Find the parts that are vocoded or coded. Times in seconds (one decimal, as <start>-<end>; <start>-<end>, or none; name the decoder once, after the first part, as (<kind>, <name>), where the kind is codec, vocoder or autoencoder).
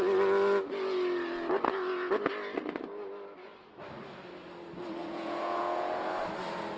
5.0-6.1 (vocoder, Vocos)